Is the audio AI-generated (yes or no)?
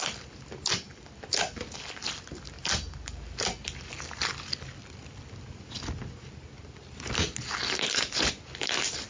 no